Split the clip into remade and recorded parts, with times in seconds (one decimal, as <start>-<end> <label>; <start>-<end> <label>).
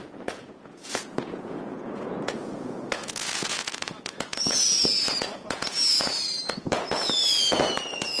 0.0-8.2 remade